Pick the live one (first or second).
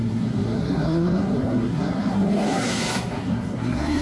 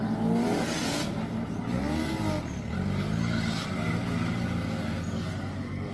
second